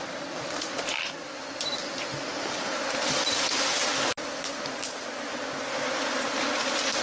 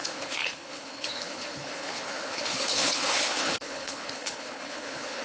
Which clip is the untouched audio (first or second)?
first